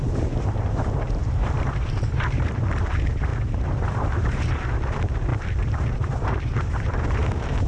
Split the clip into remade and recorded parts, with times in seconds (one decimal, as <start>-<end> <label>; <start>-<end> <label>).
0.0-7.7 remade